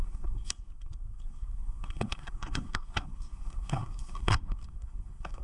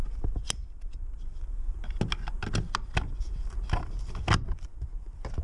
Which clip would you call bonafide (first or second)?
second